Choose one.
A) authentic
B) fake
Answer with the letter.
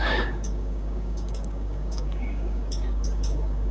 B